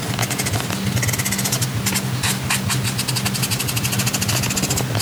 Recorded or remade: recorded